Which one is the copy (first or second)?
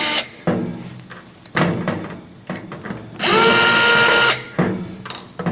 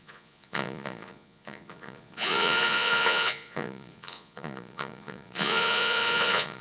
second